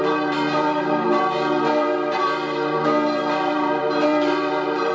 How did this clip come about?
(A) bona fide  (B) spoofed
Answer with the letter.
B